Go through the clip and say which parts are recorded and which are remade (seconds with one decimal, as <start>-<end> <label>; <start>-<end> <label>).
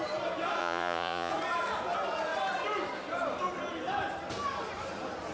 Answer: 0.0-0.6 recorded; 0.6-1.3 remade; 1.3-5.3 recorded